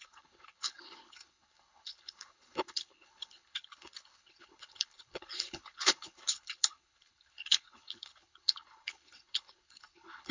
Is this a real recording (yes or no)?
no